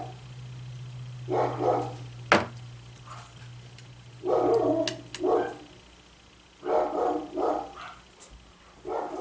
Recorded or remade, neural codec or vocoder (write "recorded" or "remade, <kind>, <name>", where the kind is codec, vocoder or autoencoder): recorded